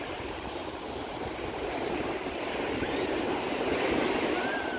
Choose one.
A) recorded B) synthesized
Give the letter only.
B